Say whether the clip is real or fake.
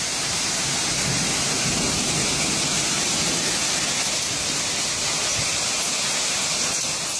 real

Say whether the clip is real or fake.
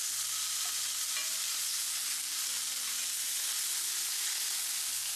real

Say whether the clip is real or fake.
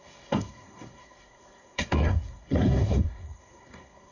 fake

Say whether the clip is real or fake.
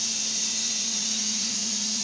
fake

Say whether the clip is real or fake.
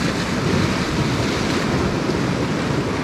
real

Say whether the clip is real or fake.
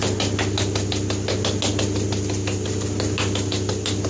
real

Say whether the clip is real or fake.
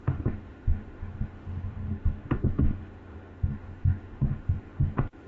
fake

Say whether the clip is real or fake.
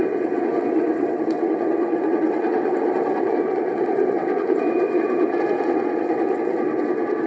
fake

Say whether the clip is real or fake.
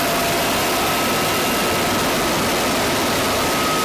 real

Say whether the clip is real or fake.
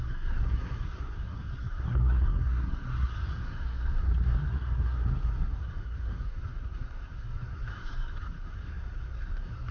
fake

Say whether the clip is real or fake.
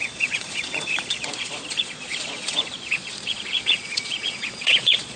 fake